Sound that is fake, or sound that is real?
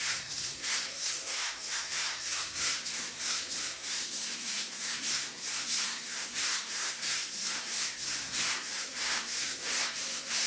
fake